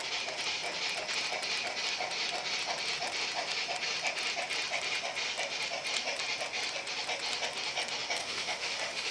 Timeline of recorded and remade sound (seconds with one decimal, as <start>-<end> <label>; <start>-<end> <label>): 0.0-8.2 recorded; 8.2-9.1 remade